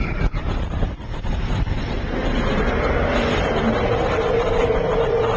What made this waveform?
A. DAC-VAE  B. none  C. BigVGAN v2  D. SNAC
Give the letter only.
B